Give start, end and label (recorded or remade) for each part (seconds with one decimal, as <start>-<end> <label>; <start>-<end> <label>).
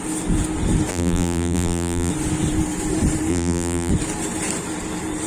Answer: 0.0-0.9 recorded; 0.9-2.1 remade; 2.1-3.3 recorded; 3.3-3.9 remade; 3.9-5.3 recorded